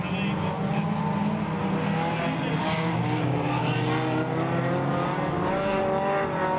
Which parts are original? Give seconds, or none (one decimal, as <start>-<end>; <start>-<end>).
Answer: 0.0-2.6; 3.6-5.0; 5.8-6.6

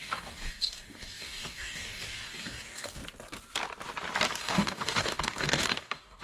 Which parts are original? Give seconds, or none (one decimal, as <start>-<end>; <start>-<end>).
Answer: 3.0-4.4

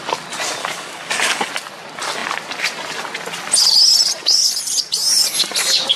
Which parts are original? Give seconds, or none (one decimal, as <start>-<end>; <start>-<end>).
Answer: 0.0-0.6; 1.5-6.0

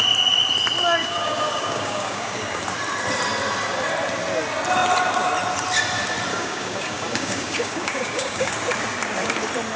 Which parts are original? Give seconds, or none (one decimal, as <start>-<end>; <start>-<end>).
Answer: 0.0-1.0; 2.6-6.3; 8.5-9.8

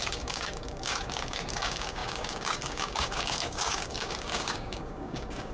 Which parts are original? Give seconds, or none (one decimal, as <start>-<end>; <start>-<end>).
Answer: none

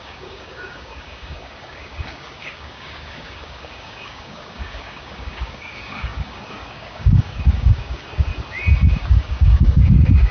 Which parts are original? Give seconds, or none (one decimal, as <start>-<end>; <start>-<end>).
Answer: 8.3-8.9

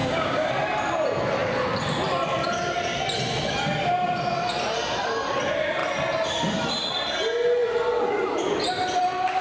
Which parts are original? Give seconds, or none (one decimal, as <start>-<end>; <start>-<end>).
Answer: 0.5-9.4

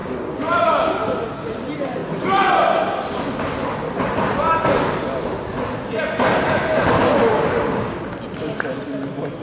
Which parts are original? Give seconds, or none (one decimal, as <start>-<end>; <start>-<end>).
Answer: 0.7-7.3; 8.1-9.4